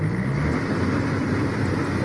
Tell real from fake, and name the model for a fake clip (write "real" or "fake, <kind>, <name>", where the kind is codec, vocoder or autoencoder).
real